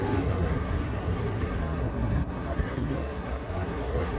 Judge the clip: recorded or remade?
remade